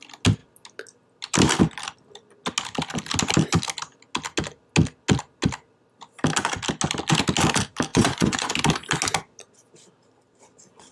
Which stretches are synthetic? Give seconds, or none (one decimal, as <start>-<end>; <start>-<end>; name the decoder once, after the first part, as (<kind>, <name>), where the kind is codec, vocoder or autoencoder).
7.9-8.5 (vocoder, Vocos)